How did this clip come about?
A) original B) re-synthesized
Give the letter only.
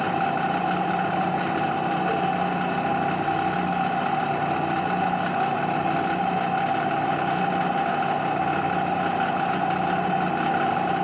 A